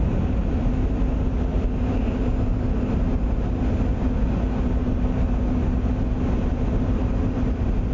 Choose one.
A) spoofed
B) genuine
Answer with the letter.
B